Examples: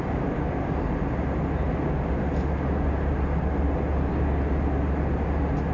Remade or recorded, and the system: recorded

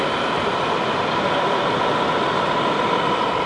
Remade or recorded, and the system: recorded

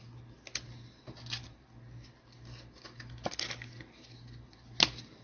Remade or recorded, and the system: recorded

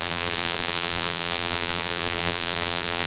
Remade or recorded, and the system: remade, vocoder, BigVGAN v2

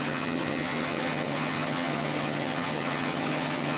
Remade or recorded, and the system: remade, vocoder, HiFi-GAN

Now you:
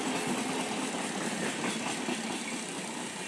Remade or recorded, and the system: recorded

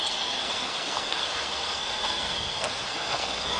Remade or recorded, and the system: remade, codec, SNAC